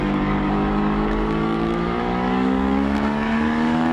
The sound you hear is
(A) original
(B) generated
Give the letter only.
B